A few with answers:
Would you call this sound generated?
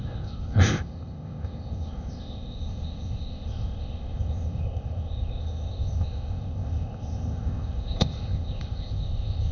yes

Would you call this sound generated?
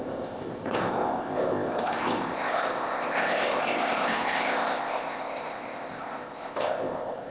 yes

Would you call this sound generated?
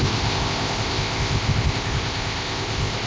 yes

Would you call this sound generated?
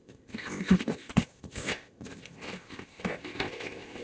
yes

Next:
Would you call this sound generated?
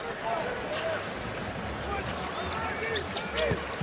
no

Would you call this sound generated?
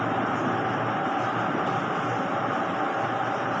no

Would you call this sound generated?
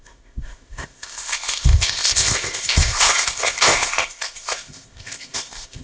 yes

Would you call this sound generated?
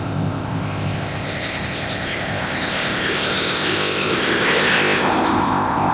yes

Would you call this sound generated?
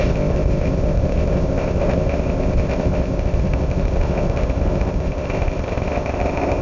yes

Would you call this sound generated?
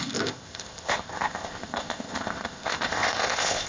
yes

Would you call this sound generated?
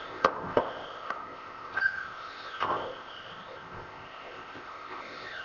yes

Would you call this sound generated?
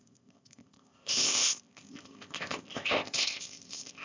yes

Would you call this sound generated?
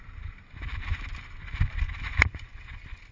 no